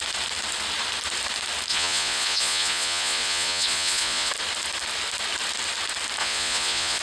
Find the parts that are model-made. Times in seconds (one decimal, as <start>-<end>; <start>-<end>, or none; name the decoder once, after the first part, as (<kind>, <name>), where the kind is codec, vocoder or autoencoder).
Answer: 1.7-4.3 (vocoder, Vocos); 6.2-7.0